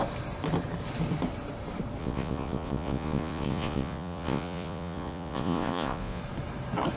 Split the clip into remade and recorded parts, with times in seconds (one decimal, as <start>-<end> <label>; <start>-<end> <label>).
0.0-2.0 recorded; 2.0-6.2 remade; 6.2-7.0 recorded